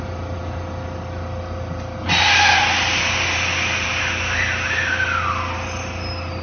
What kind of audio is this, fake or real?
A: real